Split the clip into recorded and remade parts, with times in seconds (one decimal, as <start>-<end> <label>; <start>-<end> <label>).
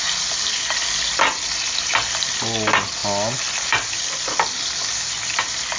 0.0-5.8 recorded